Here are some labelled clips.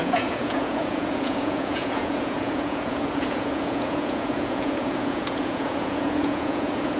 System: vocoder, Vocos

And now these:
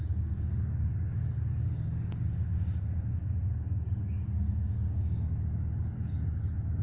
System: codec, DAC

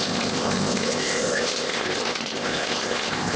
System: codec, ZipCodec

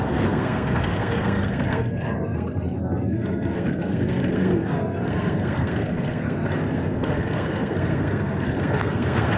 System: codec, SNAC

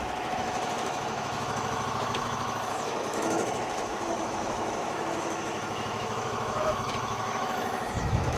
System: autoencoder, DAC-VAE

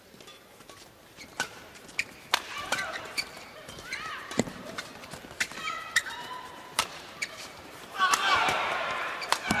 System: vocoder, BigVGAN v2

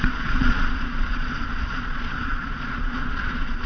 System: vocoder, Vocos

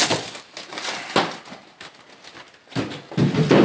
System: none